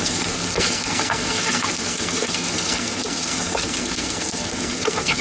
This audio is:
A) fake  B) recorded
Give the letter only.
A